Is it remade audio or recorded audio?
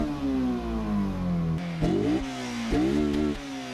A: recorded